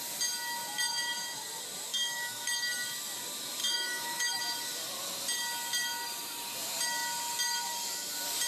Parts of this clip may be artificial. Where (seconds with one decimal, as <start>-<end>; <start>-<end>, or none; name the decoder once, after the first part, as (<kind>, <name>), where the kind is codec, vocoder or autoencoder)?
1.9-2.4 (autoencoder, DAC-VAE); 3.6-4.4